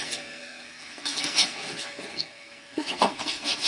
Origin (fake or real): fake